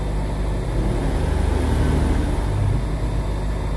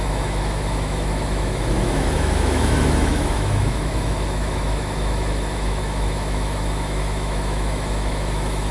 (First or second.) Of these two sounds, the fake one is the second